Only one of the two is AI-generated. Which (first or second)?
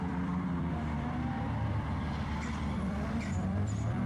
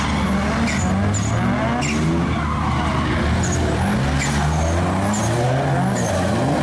first